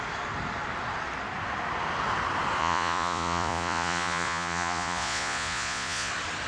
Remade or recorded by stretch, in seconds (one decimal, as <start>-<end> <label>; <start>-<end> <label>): 0.0-2.6 recorded; 2.6-6.1 remade; 6.1-6.5 recorded